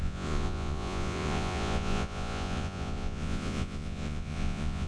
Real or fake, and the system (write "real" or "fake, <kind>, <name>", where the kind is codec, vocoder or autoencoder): fake, vocoder, Vocos